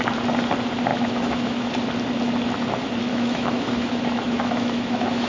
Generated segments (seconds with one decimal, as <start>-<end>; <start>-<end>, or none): 0.9-1.7; 3.1-5.3